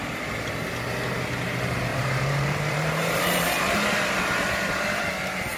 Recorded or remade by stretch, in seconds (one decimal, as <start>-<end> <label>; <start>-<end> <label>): 0.0-1.9 recorded; 1.9-5.1 remade; 5.1-5.6 recorded